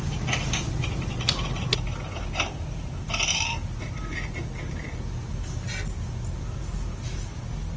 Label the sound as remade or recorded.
recorded